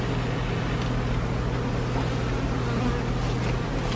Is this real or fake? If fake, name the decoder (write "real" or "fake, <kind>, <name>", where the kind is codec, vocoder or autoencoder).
real